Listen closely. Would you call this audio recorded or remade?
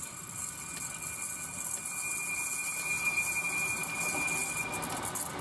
recorded